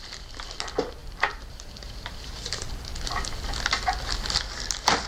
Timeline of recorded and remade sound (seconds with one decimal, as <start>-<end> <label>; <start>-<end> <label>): 0.0-1.0 recorded; 1.0-2.4 remade; 2.4-5.1 recorded